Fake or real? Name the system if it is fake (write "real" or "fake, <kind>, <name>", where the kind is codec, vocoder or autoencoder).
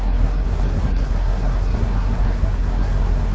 fake, codec, SNAC